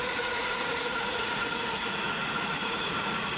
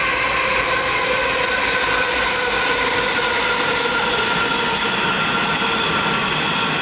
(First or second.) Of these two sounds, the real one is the second